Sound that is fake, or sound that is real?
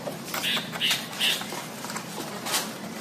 real